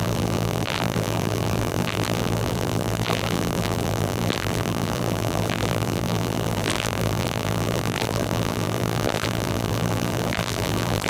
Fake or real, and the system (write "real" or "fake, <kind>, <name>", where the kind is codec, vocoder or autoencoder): fake, vocoder, BigVGAN v2